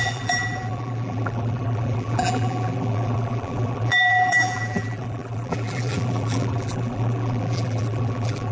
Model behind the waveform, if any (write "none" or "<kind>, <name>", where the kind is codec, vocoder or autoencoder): vocoder, BigVGAN v2